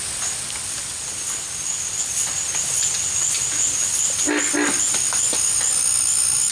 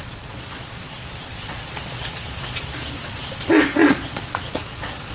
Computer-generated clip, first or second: second